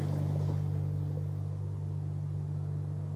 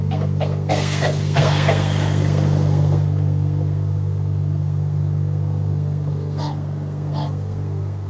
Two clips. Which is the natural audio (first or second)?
first